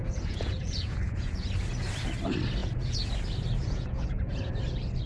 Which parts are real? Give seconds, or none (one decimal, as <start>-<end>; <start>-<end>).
1.5-2.6; 3.1-3.6; 4.4-5.1